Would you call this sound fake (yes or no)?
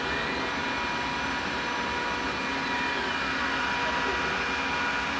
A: no